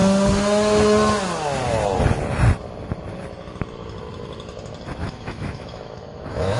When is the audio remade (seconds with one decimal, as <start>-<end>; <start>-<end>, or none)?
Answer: 5.0-6.6